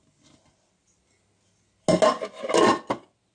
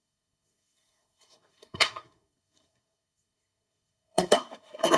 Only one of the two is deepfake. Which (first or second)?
second